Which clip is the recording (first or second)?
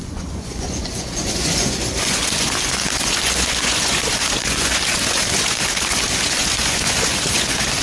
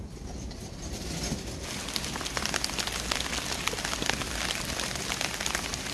second